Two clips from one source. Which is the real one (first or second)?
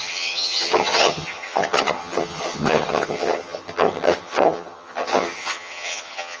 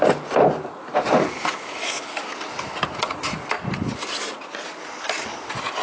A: second